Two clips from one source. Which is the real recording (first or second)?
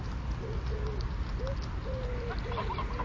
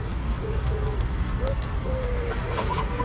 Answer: first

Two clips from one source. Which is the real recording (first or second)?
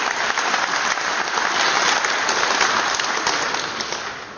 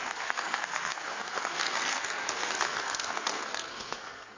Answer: first